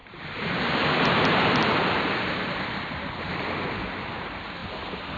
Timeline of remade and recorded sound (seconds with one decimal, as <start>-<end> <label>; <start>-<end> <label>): 0.0-3.1 remade; 3.1-5.2 recorded